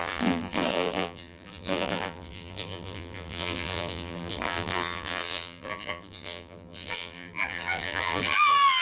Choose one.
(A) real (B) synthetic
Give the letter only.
B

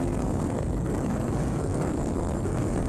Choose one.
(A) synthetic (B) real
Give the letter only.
A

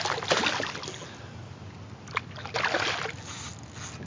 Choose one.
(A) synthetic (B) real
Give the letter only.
B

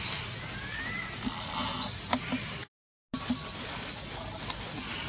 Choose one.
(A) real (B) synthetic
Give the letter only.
A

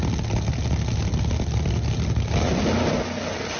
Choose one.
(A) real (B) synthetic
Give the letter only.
A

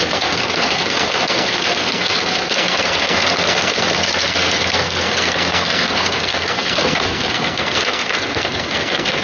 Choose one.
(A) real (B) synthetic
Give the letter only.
B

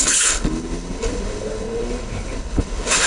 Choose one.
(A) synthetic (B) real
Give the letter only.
A